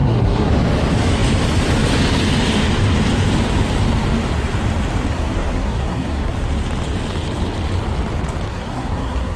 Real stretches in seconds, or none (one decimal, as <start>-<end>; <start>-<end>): 0.5-5.1; 6.3-8.5